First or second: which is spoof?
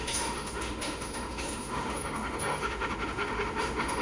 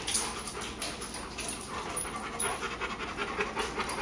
first